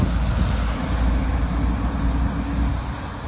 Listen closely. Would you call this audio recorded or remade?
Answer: recorded